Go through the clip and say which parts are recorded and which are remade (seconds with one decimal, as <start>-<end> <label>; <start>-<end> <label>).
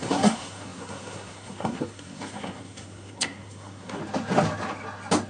0.0-4.0 remade; 4.0-5.3 recorded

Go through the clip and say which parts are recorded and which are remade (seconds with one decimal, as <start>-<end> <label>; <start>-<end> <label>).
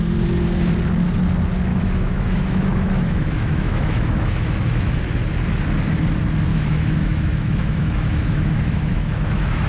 0.0-1.7 recorded; 1.7-5.0 remade; 5.0-6.5 recorded; 6.5-9.7 remade